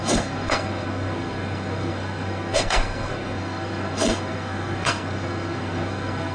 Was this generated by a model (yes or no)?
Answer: yes